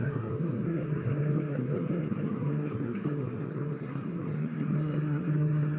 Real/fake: fake